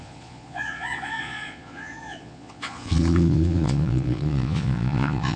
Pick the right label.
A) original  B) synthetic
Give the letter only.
B